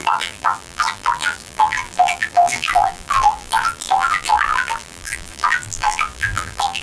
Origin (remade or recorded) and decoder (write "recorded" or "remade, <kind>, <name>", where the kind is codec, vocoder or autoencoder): remade, vocoder, BigVGAN v2